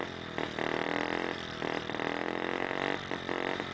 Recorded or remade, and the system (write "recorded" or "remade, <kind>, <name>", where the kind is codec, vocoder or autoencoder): remade, vocoder, BigVGAN v2